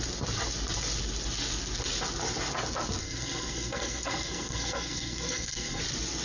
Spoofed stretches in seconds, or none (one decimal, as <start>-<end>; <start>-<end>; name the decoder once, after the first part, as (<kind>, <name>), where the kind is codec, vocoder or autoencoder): 3.0-5.8 (codec, SNAC)